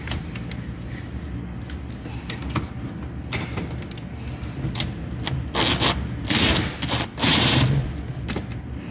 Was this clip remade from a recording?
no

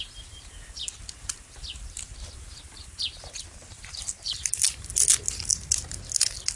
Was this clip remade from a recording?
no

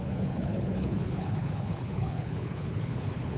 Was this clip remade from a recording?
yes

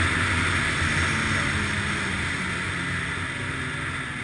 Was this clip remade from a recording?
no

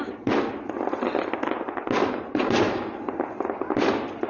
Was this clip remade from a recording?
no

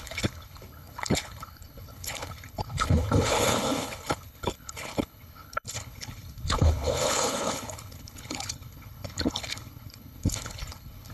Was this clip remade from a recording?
yes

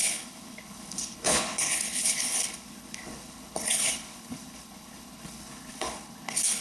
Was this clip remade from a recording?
yes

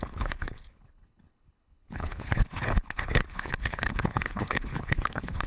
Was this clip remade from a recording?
yes